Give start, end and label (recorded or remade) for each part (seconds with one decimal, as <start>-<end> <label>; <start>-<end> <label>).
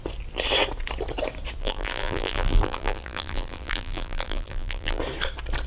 0.0-1.6 recorded; 1.6-5.0 remade; 5.0-5.7 recorded